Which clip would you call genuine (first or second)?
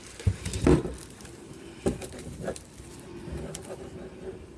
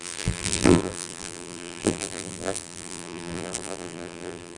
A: first